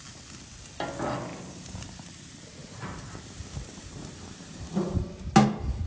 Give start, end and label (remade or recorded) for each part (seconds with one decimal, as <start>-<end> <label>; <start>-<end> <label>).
0.0-1.3 recorded; 1.3-2.1 remade; 2.1-2.6 recorded; 2.6-5.1 remade; 5.1-5.9 recorded